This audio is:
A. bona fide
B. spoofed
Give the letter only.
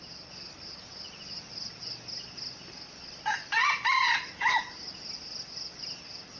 A